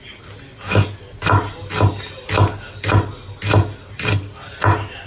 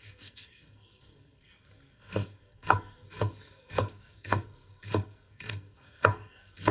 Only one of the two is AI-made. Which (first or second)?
second